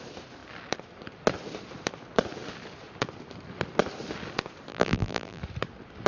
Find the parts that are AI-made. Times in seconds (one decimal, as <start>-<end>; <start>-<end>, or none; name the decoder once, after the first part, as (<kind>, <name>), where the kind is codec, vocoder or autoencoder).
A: 4.7-5.4 (vocoder, BigVGAN v2)